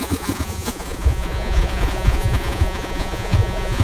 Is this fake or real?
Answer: fake